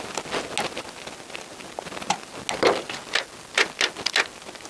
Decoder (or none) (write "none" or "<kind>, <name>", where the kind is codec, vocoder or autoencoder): none